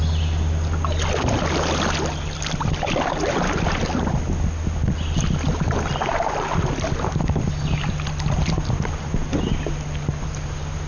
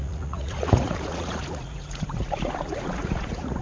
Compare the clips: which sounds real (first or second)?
first